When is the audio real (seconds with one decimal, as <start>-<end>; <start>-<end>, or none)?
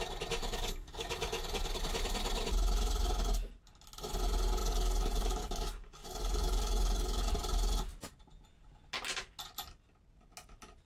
0.0-0.4; 1.8-4.6; 7.3-10.9